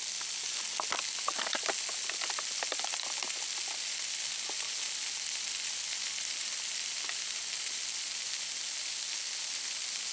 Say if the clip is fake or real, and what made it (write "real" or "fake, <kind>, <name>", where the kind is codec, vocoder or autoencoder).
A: real